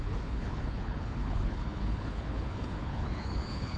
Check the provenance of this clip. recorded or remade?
remade